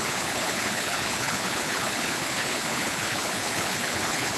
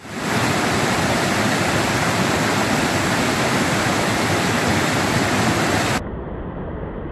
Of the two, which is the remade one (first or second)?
first